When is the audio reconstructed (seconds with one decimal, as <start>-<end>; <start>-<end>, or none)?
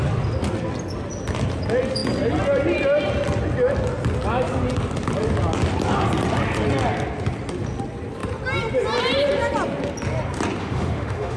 10.6-11.4